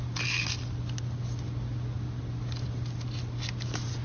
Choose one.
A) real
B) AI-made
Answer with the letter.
A